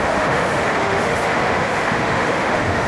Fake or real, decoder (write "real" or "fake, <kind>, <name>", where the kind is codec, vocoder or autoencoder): fake, autoencoder, DAC-VAE